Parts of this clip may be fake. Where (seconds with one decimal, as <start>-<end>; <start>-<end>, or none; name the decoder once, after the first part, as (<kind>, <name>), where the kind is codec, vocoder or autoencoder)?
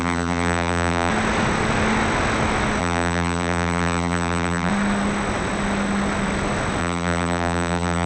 0.0-1.1 (vocoder, BigVGAN v2); 2.8-4.7; 6.8-8.1